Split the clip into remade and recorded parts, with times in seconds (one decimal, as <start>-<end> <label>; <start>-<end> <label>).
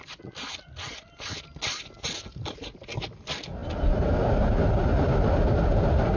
0.0-6.2 recorded